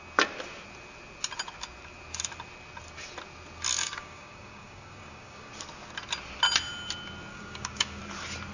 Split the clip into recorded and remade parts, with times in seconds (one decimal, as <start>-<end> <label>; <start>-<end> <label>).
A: 0.0-3.8 recorded; 3.8-5.5 remade; 5.5-7.3 recorded; 7.3-8.0 remade; 8.0-8.5 recorded

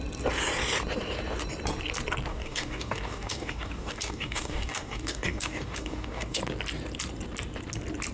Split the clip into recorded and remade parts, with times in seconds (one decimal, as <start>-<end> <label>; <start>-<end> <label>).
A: 0.0-2.3 recorded; 2.3-6.4 remade; 6.4-8.1 recorded

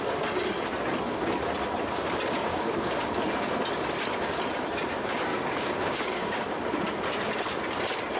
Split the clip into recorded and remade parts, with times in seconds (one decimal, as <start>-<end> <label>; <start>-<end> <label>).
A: 0.0-2.5 recorded; 2.5-3.2 remade; 3.2-5.3 recorded; 5.3-6.4 remade; 6.4-8.2 recorded

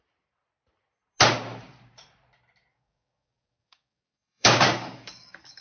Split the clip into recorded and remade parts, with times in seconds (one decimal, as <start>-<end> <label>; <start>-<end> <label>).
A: 0.0-2.7 recorded; 2.7-5.6 remade